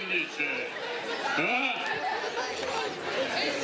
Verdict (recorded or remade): recorded